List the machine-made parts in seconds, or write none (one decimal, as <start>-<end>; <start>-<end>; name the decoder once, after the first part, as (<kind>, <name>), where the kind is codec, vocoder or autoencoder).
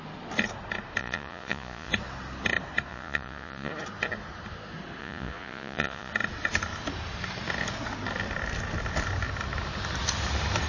1.0-1.9 (vocoder, Vocos); 2.9-3.7; 5.0-6.1